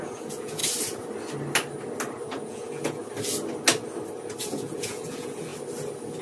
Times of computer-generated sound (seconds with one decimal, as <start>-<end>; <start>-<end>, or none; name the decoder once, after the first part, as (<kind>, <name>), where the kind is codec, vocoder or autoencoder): 0.0-0.6 (vocoder, Vocos); 2.3-3.0; 4.4-5.5